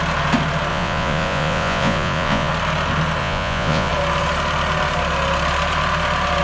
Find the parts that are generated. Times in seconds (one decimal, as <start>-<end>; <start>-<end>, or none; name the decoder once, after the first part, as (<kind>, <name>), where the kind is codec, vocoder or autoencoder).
0.7-2.5 (vocoder, Vocos); 3.2-3.9